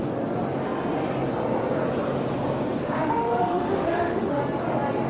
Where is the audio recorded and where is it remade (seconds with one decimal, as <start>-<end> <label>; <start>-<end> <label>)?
0.0-2.8 recorded; 2.8-4.4 remade; 4.4-5.1 recorded